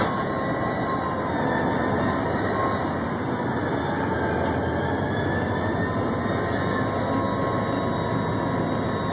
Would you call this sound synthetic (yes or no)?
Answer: no